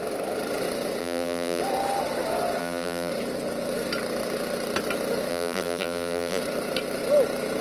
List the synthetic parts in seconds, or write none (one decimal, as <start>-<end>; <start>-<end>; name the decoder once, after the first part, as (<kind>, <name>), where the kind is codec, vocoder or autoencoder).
1.0-1.6 (vocoder, BigVGAN v2); 2.6-3.1; 5.3-6.4